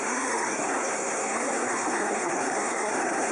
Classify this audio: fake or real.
fake